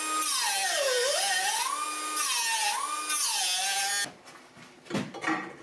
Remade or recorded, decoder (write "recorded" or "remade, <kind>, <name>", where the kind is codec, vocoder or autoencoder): recorded